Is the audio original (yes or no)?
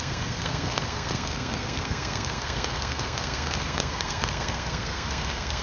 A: no